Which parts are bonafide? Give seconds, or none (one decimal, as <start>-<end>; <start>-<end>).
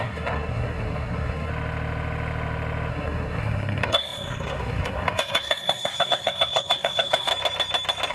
1.5-2.9; 7.3-8.1